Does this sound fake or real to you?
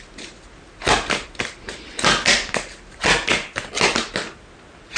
real